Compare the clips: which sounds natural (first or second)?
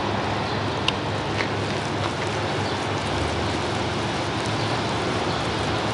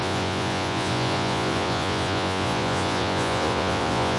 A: first